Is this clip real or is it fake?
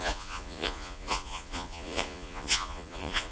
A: fake